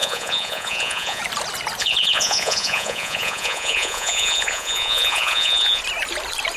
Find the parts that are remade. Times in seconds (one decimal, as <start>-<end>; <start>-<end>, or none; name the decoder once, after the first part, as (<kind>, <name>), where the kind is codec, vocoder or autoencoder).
0.0-1.2 (vocoder, Vocos); 1.8-5.8